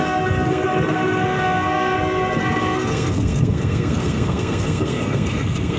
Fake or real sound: fake